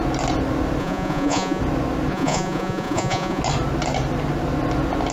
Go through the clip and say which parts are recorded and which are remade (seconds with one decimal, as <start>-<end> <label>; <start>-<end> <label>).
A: 0.0-0.8 recorded; 0.8-1.6 remade; 1.6-2.1 recorded; 2.1-3.4 remade; 3.4-5.1 recorded